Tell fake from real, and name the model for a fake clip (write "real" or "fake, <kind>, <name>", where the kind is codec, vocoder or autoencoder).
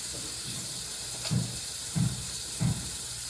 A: fake, vocoder, BigVGAN v2